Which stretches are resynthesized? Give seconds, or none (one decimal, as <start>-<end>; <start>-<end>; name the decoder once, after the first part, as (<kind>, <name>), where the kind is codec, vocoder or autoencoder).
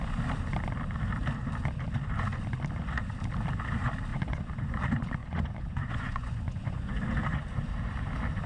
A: 4.1-4.8 (vocoder, Vocos); 5.2-7.0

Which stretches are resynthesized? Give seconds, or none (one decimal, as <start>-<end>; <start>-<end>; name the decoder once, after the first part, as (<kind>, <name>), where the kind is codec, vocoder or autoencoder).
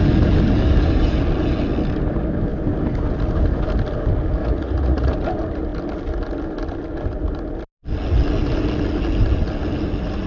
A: 4.4-5.1 (vocoder, Vocos)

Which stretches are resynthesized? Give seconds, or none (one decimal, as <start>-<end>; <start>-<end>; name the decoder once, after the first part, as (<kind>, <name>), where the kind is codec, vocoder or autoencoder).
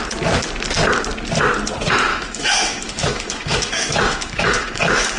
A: 2.1-5.2 (autoencoder, DAC-VAE)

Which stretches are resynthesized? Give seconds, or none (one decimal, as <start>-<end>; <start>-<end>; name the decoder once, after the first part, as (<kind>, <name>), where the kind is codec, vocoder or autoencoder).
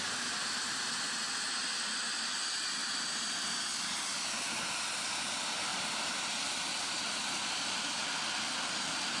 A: 5.7-6.3 (vocoder, BigVGAN v2)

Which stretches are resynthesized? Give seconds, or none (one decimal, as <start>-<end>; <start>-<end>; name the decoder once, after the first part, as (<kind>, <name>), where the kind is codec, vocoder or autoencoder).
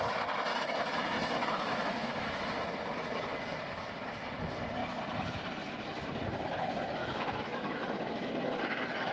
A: 0.5-2.4 (autoencoder, DAC-VAE); 7.0-8.1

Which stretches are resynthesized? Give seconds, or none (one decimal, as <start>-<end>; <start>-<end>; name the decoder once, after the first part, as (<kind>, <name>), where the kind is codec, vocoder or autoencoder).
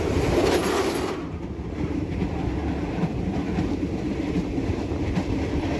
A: none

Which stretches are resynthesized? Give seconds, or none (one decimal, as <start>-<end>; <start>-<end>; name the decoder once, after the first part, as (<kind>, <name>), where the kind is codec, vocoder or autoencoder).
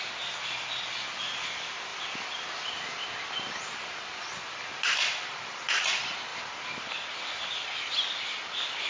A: none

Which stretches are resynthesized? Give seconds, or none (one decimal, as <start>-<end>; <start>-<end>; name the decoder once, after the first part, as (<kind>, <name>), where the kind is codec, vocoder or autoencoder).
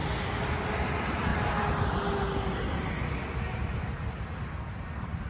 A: none